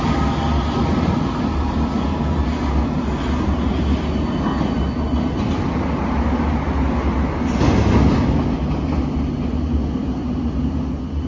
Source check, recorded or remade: recorded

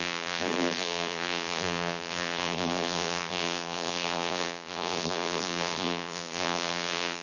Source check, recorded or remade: remade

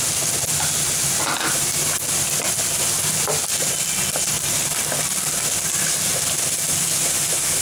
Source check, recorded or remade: recorded